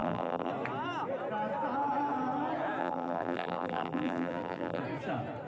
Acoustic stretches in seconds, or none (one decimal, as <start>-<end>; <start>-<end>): 0.5-2.8; 4.8-5.5